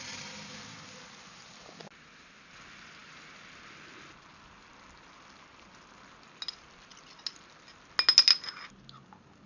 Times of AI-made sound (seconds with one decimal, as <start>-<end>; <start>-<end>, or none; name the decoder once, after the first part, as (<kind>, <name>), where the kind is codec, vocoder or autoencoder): none